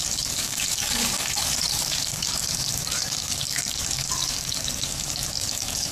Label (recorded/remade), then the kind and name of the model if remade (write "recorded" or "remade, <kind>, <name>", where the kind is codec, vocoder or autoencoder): remade, codec, DAC